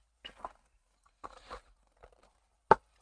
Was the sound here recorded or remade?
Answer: recorded